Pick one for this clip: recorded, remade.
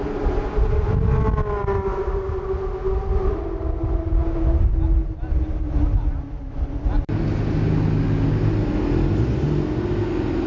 recorded